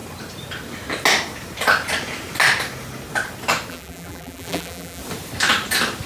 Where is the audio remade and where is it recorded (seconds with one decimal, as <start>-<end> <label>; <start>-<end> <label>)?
0.0-3.7 recorded; 3.7-5.0 remade; 5.0-6.1 recorded